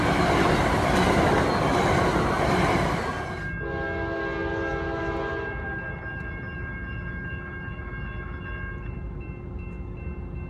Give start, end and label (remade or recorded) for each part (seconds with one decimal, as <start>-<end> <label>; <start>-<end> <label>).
0.0-10.5 recorded